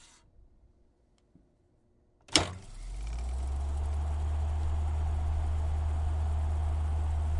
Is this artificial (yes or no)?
no